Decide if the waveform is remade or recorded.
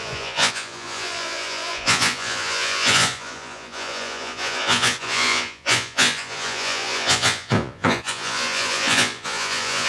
remade